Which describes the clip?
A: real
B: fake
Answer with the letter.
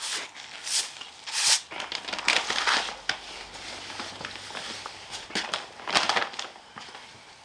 A